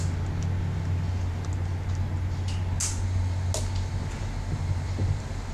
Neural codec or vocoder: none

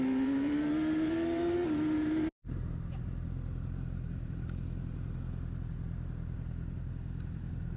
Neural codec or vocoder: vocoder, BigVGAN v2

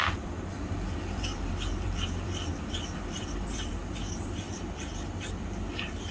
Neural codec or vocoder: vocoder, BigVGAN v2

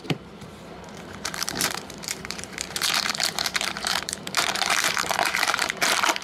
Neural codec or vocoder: vocoder, BigVGAN v2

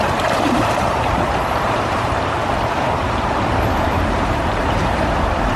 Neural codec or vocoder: vocoder, BigVGAN v2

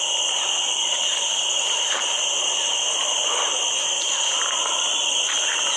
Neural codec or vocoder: none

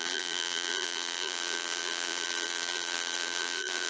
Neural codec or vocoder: vocoder, BigVGAN v2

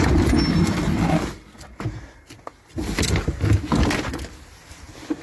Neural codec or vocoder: none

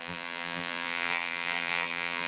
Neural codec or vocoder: vocoder, BigVGAN v2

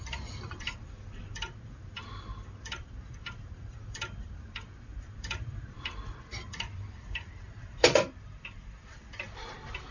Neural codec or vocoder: vocoder, BigVGAN v2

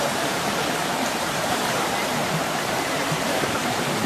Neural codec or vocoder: vocoder, BigVGAN v2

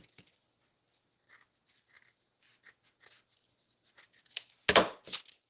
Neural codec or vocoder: none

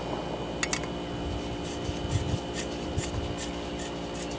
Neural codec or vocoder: none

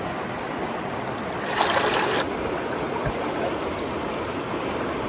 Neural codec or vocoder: none